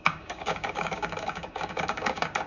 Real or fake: fake